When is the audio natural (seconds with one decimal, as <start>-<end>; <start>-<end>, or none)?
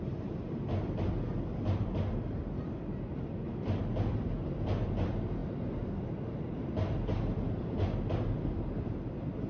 0.0-9.5